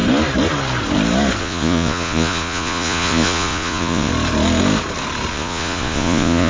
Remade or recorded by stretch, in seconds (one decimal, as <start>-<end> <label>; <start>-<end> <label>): 0.0-1.4 recorded; 1.4-4.1 remade; 4.1-5.3 recorded; 5.3-6.5 remade